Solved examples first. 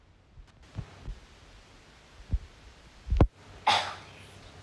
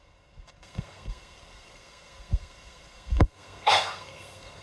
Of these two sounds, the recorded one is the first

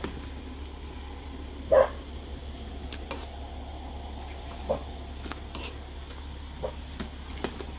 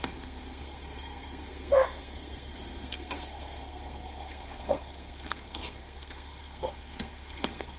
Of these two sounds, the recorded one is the first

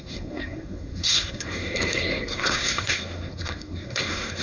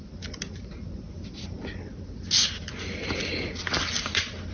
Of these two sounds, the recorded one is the second